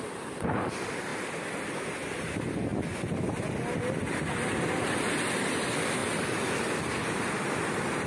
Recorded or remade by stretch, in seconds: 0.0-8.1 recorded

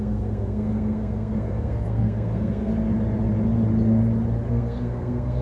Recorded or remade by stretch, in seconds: 0.0-2.7 remade; 2.7-4.5 recorded; 4.5-5.4 remade